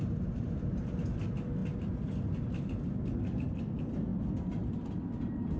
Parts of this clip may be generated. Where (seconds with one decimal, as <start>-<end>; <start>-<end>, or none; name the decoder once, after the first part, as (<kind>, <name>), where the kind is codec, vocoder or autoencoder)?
none